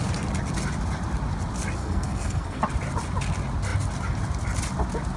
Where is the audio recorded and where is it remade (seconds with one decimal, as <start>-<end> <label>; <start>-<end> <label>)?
0.0-1.8 recorded; 1.8-2.6 remade; 2.6-5.2 recorded